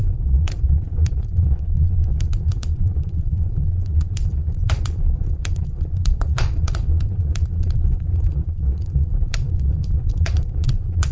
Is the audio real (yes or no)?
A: no